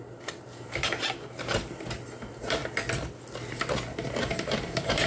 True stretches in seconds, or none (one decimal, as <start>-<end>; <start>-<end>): 2.6-4.2